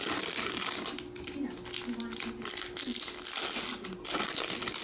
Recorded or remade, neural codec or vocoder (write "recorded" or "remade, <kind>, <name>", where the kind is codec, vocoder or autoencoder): recorded